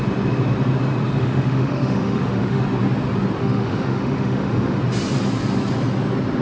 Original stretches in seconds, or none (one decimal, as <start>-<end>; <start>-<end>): 0.0-1.2; 2.6-3.4; 4.8-6.4